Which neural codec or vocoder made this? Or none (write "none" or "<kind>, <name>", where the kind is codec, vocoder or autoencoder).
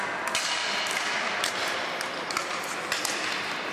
none